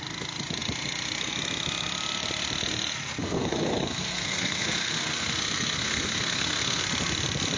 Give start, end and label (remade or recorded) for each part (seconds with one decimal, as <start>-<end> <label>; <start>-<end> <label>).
0.0-3.2 recorded; 3.2-6.8 remade; 6.8-7.6 recorded